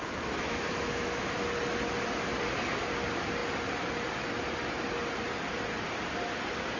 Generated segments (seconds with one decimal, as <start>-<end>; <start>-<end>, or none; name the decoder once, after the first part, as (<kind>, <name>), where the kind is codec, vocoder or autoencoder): 0.0-1.4 (autoencoder, DAC-VAE)